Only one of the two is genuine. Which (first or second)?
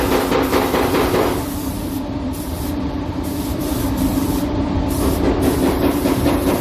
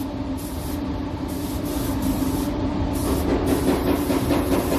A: second